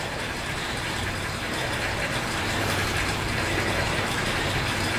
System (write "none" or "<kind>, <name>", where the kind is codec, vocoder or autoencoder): vocoder, BigVGAN v2